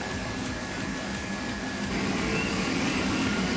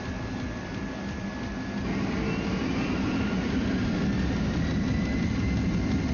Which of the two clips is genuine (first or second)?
second